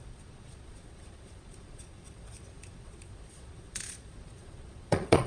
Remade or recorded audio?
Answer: remade